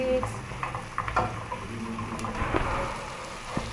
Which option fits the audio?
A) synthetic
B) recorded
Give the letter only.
B